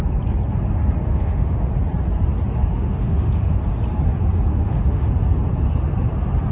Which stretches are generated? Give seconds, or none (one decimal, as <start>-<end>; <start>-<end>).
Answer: 1.0-1.7; 2.7-3.6; 4.5-5.1